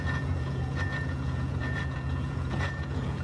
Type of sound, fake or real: fake